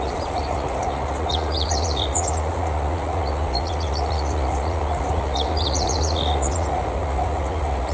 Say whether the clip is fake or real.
fake